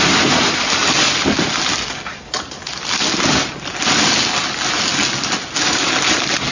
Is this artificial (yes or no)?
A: no